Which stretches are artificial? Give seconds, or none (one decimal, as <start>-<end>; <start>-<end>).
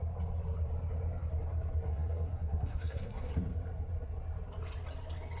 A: 1.9-3.3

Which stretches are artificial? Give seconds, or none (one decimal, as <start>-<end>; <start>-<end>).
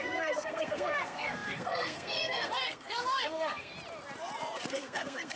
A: 0.0-3.7; 4.7-5.4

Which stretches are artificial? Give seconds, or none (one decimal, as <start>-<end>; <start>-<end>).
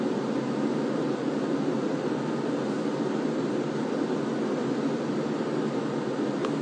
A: none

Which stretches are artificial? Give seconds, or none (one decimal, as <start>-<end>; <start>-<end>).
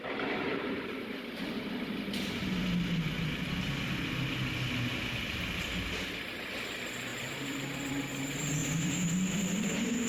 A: 0.5-1.0; 7.1-7.8; 8.6-9.6